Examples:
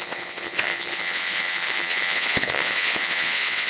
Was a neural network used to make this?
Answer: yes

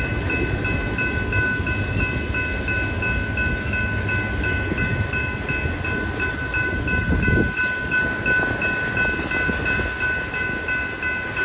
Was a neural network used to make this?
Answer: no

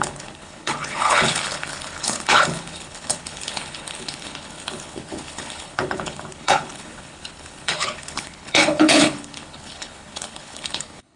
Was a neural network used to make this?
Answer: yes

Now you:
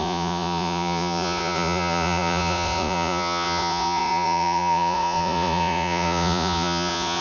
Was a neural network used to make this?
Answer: yes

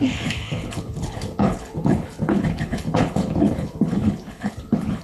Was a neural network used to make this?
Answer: yes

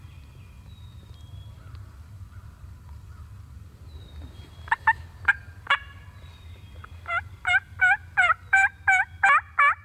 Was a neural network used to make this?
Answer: no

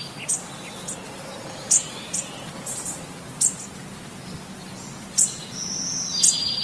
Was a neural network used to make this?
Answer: no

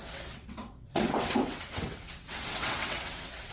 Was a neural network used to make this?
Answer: yes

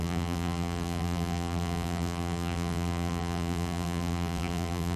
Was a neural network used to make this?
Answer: yes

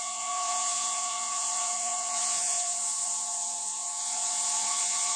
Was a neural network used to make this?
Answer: yes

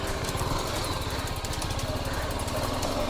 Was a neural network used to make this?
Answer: no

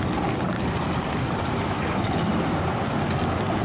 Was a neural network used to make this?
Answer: no